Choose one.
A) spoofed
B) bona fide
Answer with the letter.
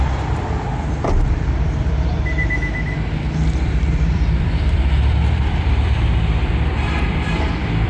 A